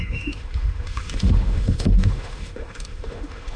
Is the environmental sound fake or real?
fake